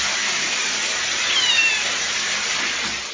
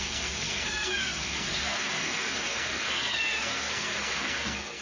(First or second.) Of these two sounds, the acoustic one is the first